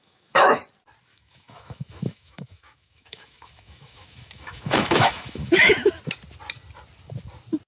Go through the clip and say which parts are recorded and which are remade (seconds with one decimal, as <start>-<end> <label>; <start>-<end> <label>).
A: 0.0-0.6 remade; 0.6-1.1 recorded; 1.1-5.7 remade; 5.7-7.7 recorded